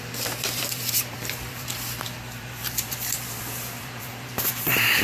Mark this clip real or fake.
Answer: fake